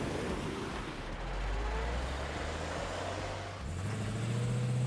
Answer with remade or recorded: recorded